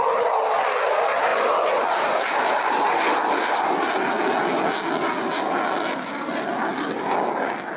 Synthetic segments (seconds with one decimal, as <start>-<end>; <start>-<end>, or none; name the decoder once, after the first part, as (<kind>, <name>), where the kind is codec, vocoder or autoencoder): none